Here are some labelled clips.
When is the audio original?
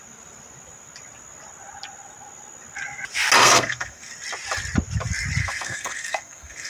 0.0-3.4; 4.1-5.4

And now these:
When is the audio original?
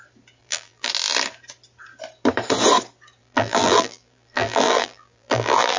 0.0-0.4; 0.9-3.2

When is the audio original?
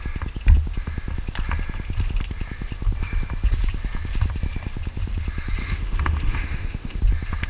0.0-5.6; 7.0-7.5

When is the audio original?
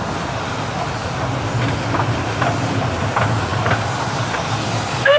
0.0-5.2